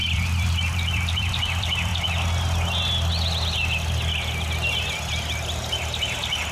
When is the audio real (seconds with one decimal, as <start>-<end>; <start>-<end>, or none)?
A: 1.9-4.5